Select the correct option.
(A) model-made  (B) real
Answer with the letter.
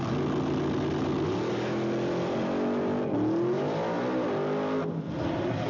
B